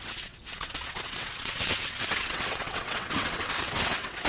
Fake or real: fake